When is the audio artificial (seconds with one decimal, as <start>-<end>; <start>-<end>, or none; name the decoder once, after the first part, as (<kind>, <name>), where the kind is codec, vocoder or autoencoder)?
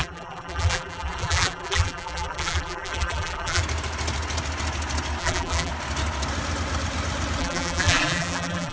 0.0-3.6 (vocoder, BigVGAN v2); 5.2-5.7; 7.4-8.7